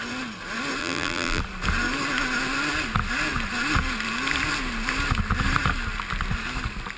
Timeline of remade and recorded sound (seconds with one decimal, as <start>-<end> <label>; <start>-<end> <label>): 0.0-0.8 recorded; 0.8-1.4 remade; 1.4-7.0 recorded